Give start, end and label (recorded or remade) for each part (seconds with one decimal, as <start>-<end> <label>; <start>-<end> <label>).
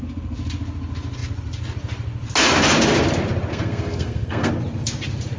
0.0-3.5 recorded; 3.5-4.5 remade; 4.5-5.4 recorded